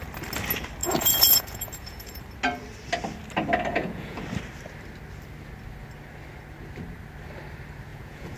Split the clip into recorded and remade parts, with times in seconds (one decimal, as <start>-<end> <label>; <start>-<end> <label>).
0.0-0.8 recorded; 0.8-2.2 remade; 2.2-3.7 recorded; 3.7-4.2 remade; 4.2-7.9 recorded; 7.9-8.4 remade